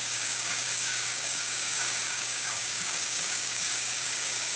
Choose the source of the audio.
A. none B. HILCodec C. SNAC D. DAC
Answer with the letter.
D